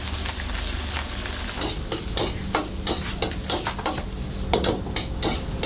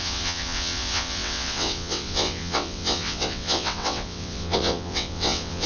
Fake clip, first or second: second